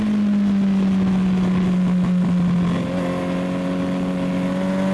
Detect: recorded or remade recorded